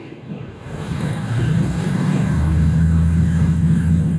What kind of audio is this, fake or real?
fake